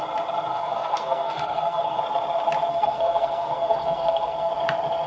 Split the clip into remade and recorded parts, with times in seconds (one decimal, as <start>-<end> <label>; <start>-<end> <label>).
0.0-0.5 recorded; 0.5-2.0 remade; 2.0-2.7 recorded; 2.7-4.5 remade; 4.5-5.1 recorded

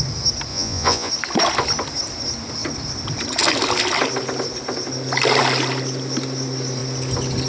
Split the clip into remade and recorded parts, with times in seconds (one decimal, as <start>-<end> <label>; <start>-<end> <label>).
0.0-0.5 recorded; 0.5-1.1 remade; 1.1-7.5 recorded

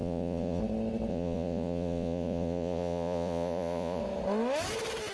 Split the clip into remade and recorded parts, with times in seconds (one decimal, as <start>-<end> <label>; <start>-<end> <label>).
0.0-0.6 remade; 0.6-1.1 recorded; 1.1-4.0 remade; 4.0-5.1 recorded

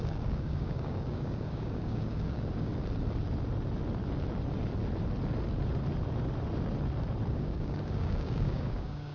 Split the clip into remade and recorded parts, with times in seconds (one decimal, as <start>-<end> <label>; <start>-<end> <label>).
0.0-2.7 remade; 2.7-7.3 recorded; 7.3-9.1 remade

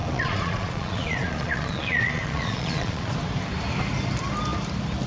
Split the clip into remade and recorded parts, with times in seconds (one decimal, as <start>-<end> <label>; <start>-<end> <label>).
0.0-3.1 remade; 3.1-5.1 recorded